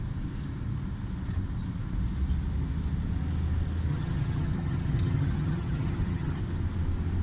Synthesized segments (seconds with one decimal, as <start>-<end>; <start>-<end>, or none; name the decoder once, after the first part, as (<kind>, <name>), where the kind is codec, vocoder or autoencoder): 3.9-6.4 (vocoder, HiFi-GAN)

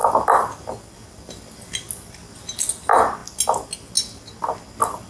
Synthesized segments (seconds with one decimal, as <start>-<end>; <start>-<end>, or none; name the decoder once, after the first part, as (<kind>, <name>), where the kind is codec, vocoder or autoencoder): none